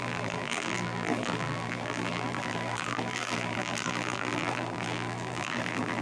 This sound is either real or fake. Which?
fake